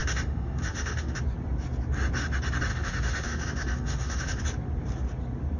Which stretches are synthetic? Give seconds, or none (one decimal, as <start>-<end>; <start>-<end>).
0.0-1.2; 2.7-4.4